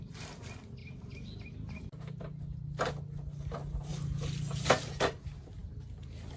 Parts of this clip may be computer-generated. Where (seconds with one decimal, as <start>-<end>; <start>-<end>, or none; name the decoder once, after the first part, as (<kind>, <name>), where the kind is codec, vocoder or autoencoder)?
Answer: none

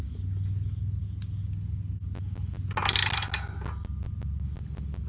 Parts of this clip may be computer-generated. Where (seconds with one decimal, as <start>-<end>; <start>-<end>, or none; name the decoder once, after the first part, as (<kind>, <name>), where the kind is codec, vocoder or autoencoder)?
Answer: none

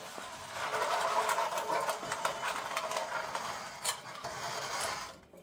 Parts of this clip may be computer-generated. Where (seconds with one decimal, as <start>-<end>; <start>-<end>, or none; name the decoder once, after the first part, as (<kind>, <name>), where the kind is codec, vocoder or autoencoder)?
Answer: none

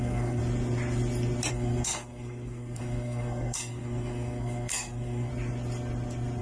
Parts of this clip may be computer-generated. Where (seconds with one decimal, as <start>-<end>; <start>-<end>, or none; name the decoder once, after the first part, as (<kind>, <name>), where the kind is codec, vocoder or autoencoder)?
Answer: 0.0-0.4 (codec, SNAC); 1.5-5.3

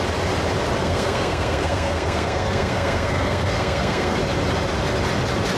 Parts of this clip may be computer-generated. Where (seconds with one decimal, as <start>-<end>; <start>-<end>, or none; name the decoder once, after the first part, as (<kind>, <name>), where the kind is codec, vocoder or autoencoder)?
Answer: 0.8-4.2 (codec, SNAC)

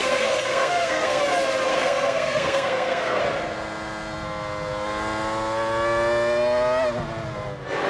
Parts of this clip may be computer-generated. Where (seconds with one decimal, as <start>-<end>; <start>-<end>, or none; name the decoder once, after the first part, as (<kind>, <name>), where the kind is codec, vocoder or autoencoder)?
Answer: 0.0-1.2 (codec, SNAC); 1.7-3.2

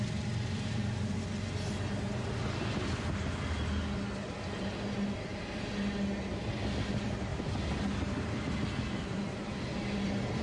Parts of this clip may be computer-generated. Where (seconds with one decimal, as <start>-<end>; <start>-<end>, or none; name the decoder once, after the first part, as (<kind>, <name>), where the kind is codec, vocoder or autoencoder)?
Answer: none